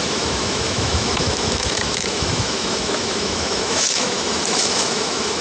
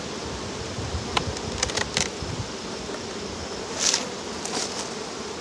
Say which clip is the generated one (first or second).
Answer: first